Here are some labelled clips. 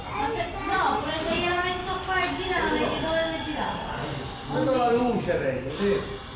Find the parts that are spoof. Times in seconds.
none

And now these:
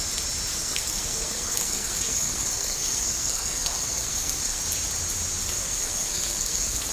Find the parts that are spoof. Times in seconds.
0.5-4.6 (codec, SNAC); 5.4-6.9